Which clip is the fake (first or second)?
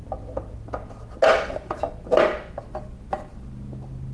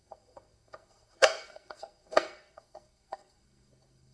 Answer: second